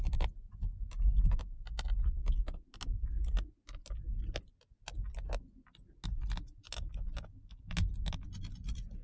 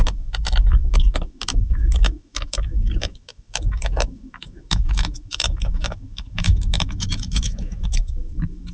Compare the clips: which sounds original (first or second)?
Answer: first